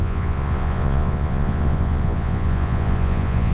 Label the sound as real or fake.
fake